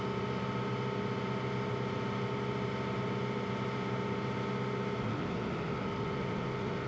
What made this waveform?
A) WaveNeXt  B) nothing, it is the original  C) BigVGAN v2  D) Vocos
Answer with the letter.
B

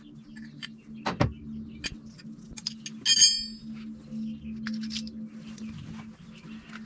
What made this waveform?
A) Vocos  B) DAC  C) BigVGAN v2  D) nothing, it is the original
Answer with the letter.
D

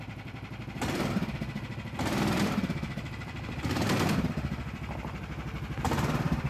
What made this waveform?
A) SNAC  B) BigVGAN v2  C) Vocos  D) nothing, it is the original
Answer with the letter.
B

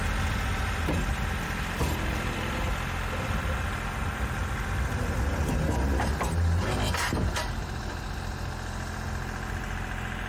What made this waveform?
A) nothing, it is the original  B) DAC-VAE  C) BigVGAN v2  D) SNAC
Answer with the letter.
A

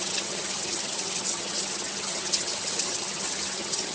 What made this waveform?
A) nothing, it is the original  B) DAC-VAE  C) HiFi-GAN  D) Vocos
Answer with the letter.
C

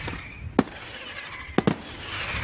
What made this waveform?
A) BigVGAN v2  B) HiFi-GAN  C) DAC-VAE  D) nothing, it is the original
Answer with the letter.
D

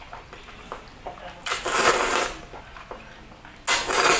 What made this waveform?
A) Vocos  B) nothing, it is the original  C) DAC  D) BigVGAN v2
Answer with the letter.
B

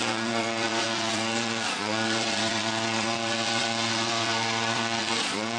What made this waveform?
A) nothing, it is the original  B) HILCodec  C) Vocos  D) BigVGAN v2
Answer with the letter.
C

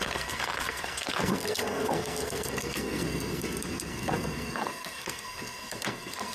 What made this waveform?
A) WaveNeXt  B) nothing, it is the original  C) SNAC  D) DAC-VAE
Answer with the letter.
C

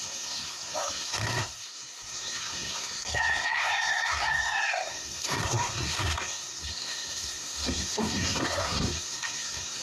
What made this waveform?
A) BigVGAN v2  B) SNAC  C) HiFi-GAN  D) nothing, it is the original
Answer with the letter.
B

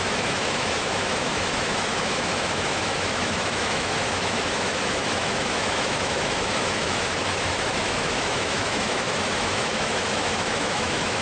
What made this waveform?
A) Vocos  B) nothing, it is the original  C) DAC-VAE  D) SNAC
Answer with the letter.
C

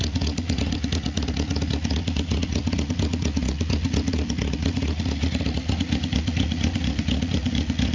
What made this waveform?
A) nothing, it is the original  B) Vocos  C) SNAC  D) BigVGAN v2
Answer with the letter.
B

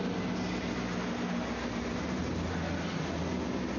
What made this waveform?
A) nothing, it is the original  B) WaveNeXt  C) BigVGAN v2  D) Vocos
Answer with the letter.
A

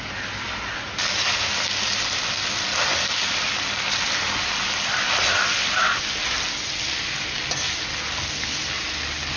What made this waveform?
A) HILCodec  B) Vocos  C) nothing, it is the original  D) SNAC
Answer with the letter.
C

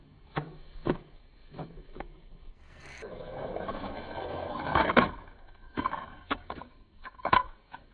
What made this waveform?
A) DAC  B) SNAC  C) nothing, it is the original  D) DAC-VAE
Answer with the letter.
B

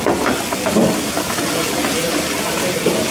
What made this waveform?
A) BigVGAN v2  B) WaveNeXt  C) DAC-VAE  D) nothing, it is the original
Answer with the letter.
D